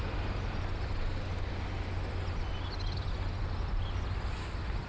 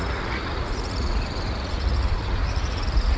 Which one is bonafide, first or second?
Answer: first